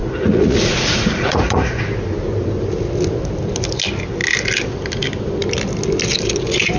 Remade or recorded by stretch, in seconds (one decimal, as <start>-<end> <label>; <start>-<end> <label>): 0.0-1.8 remade; 1.8-6.8 recorded